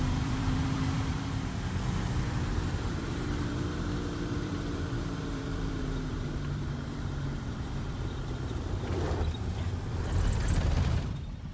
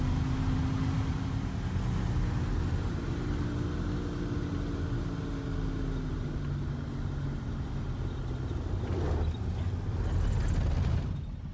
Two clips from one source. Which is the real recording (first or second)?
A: second